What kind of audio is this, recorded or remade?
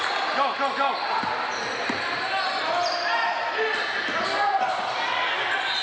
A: recorded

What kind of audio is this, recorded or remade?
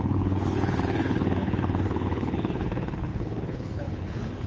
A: remade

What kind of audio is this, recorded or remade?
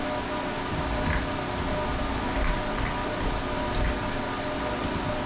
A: recorded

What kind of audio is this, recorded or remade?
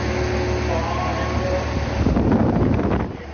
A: recorded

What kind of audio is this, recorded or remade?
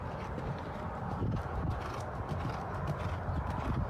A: recorded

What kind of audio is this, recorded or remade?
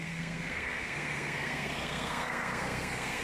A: remade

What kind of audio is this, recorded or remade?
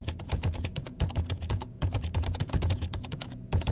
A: remade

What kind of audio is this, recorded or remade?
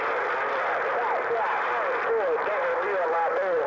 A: recorded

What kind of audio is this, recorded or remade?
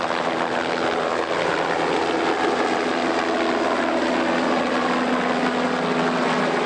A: recorded